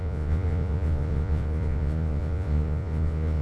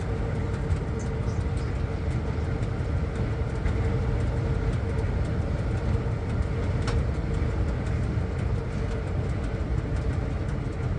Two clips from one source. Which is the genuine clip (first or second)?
second